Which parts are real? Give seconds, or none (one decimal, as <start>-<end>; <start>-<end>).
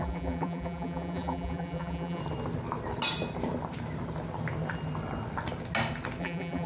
2.2-6.2